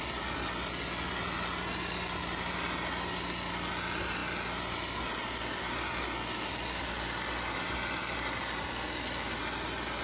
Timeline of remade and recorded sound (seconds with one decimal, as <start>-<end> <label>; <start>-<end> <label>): 0.0-10.0 recorded